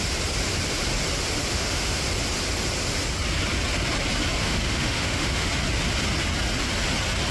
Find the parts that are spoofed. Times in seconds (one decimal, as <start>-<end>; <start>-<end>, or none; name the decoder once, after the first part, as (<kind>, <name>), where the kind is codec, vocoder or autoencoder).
1.5-2.0 (autoencoder, DAC-VAE); 4.4-5.5